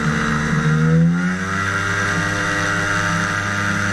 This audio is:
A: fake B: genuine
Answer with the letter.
B